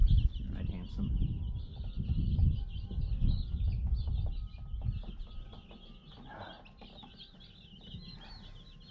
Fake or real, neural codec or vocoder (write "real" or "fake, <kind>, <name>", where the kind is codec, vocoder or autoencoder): real